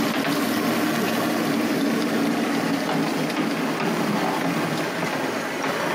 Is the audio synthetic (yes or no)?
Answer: no